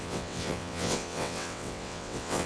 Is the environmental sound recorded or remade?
remade